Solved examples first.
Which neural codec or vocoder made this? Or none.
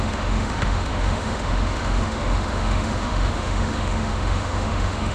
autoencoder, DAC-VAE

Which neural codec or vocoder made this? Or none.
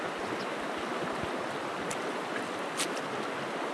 none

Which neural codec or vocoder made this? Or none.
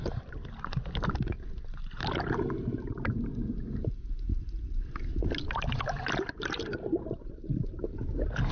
none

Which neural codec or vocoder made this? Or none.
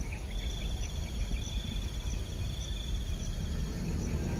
none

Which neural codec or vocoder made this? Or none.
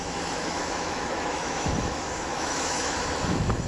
autoencoder, DAC-VAE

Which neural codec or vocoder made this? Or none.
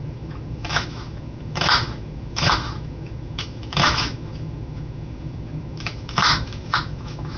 autoencoder, DAC-VAE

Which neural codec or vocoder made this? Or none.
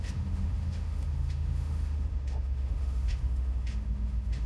autoencoder, DAC-VAE